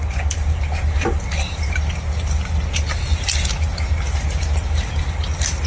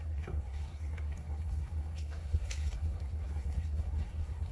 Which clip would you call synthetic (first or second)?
second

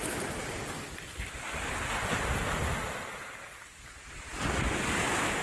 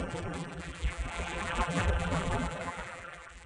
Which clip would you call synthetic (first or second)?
second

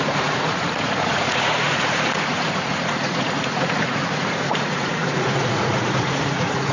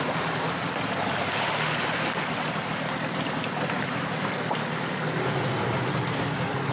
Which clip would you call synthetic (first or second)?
first